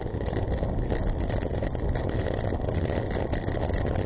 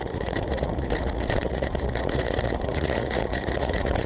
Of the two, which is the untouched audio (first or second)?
first